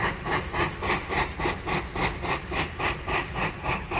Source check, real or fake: real